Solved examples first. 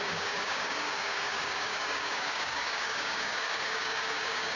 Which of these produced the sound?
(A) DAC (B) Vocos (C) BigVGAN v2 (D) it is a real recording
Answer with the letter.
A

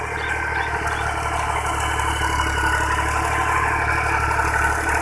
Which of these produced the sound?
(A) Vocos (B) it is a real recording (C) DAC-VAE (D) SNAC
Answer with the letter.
B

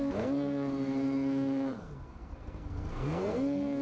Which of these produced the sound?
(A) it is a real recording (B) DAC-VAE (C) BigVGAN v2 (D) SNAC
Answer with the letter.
D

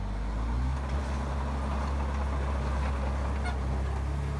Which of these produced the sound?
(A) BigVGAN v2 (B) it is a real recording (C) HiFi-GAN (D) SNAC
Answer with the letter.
B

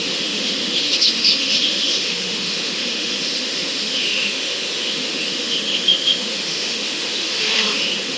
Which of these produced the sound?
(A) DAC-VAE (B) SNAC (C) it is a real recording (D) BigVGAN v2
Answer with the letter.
A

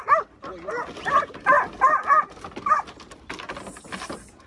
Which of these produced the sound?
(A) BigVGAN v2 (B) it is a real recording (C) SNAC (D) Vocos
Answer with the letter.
B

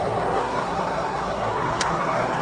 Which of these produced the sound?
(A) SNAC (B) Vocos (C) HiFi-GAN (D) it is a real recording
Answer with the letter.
A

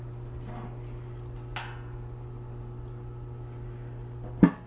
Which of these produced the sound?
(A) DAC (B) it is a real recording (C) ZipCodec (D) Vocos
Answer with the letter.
B